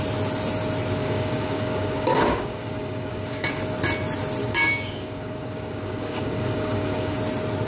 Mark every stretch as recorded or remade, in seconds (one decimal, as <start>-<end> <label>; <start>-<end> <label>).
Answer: 0.0-1.0 recorded; 1.0-3.6 remade; 3.6-4.4 recorded; 4.4-7.2 remade; 7.2-7.7 recorded